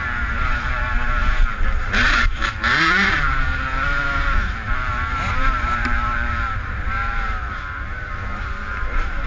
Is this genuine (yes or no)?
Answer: no